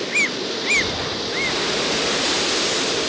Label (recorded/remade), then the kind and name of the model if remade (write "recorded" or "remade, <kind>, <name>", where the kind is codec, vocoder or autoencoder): recorded